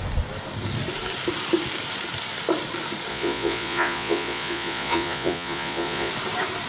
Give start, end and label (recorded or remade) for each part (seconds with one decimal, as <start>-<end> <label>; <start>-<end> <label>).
0.0-3.1 recorded; 3.1-6.1 remade; 6.1-6.7 recorded